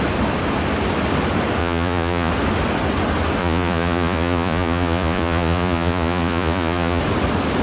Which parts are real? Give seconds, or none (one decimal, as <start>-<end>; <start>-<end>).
0.0-1.6; 2.3-3.4; 7.0-7.6

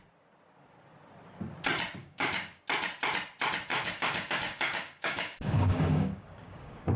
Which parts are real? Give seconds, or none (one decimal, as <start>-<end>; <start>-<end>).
0.0-2.0; 2.6-3.7

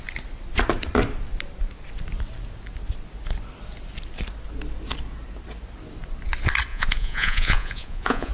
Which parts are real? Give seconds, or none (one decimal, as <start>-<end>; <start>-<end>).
0.0-6.7

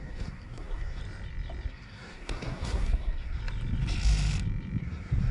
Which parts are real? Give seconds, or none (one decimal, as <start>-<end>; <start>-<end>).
1.0-1.7; 3.4-4.8

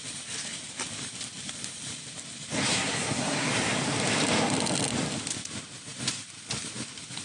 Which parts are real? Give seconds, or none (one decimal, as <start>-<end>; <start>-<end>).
0.0-2.7; 3.5-7.2

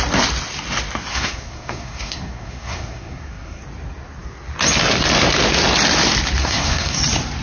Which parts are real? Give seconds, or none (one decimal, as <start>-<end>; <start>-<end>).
0.0-1.1; 3.6-6.4; 7.0-7.4